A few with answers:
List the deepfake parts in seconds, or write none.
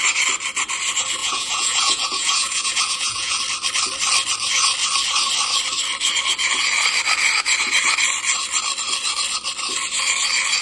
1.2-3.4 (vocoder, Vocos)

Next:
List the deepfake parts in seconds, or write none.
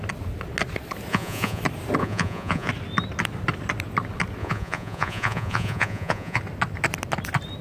1.1-1.6 (vocoder, Vocos); 2.0-2.7; 4.4-6.4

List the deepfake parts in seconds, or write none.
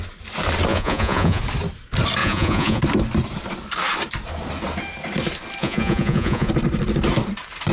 0.7-1.4 (vocoder, Vocos); 2.2-2.8; 5.6-6.5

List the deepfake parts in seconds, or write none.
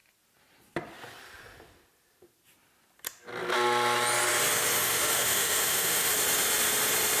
4.8-6.1 (autoencoder, DAC-VAE)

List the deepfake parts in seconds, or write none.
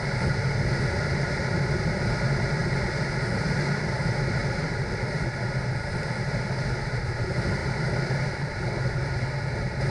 none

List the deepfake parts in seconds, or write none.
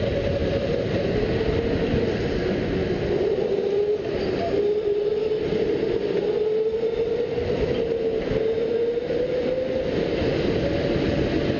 0.4-1.1 (vocoder, BigVGAN v2)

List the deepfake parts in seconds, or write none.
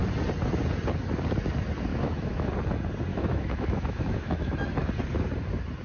1.9-2.5 (autoencoder, DAC-VAE); 3.1-4.5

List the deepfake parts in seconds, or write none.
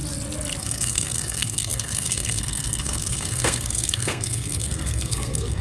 0.6-5.6 (codec, SNAC)